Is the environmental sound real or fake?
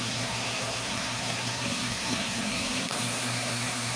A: fake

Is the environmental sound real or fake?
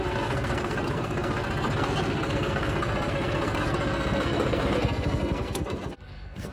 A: fake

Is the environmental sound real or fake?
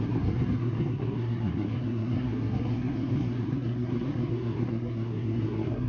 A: fake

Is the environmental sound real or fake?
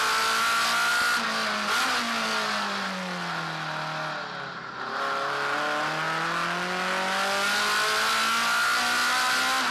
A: real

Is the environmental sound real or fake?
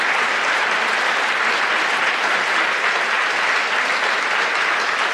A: real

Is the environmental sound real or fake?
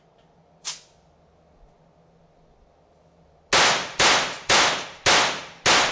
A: real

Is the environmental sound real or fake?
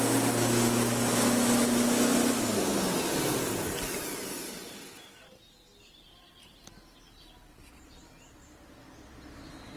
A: real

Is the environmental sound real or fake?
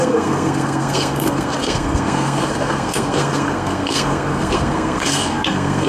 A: fake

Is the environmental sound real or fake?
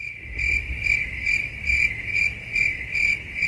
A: real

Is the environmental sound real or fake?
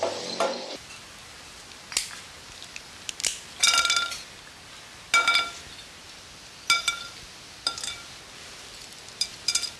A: real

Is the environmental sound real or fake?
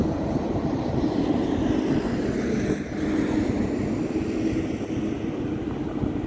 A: real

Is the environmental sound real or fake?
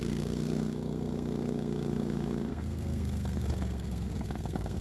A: fake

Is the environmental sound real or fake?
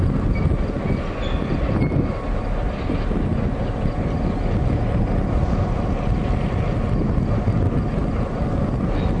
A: real